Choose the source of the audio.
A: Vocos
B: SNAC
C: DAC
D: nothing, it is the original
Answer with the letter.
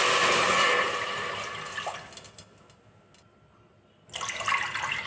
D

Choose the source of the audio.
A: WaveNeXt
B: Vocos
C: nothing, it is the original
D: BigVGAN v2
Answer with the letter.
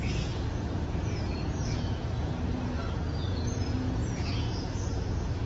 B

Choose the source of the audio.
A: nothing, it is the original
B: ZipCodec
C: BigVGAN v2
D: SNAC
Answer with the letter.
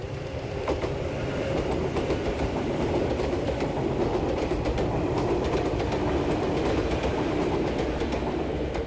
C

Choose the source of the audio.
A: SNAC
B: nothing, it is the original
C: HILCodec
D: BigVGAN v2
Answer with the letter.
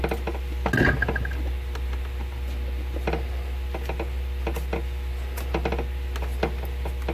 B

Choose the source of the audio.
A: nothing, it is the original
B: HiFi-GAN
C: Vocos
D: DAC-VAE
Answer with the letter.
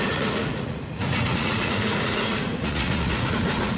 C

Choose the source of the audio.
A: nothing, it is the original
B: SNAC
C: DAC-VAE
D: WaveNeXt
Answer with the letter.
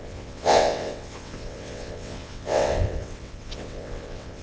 D